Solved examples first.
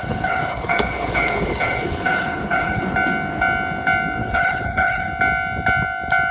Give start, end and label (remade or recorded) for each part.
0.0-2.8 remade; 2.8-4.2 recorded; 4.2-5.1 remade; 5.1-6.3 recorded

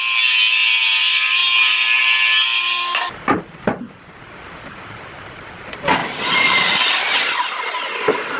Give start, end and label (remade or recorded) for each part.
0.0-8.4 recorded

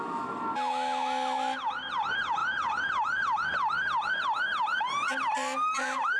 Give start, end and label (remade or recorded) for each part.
0.0-6.2 recorded